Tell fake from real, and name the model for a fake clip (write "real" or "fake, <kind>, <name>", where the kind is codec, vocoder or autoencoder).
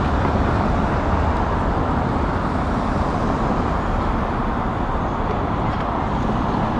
real